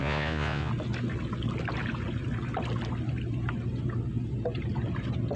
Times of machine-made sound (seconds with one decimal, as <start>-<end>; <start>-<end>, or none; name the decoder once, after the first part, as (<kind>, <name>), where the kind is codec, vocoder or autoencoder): 0.0-0.7 (vocoder, Vocos)